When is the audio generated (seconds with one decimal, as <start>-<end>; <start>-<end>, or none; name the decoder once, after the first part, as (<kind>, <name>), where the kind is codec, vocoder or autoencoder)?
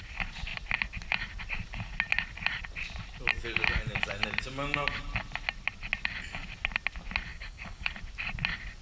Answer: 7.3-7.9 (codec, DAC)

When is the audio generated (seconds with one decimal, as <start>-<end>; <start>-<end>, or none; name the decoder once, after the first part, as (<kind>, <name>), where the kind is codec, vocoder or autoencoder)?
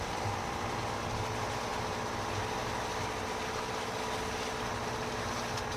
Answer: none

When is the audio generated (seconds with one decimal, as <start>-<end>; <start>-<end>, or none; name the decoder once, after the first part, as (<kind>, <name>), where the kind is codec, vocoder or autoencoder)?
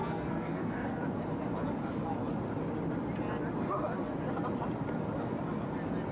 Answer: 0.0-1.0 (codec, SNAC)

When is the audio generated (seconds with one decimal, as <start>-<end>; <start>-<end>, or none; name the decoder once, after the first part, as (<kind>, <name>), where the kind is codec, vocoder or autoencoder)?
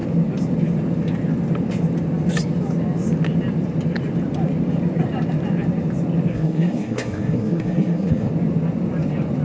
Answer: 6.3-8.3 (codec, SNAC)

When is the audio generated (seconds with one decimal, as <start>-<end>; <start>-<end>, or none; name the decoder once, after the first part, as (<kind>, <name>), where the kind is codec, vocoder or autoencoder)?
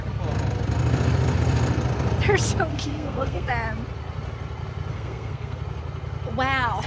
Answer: 2.7-3.5 (codec, SNAC); 4.9-5.6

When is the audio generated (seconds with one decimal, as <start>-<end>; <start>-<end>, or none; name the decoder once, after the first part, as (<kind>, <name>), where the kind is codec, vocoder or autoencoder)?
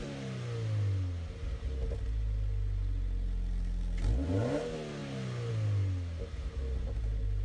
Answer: none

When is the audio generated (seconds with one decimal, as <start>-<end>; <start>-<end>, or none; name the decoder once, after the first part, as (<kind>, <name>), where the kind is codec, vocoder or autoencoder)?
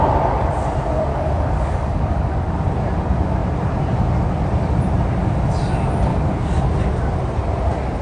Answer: 1.1-2.5 (codec, DAC); 6.1-6.6